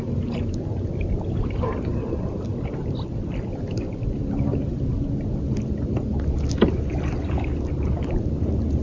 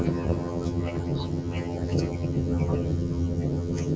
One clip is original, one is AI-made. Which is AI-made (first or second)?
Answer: second